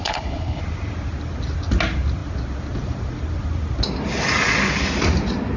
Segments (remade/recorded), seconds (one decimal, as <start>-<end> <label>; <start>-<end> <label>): 0.0-0.6 remade; 0.6-5.6 recorded